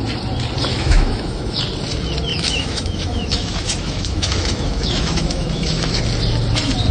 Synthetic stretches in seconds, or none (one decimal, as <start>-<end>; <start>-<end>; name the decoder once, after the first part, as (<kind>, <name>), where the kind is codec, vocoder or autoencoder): 0.7-1.6 (autoencoder, DAC-VAE); 2.3-6.0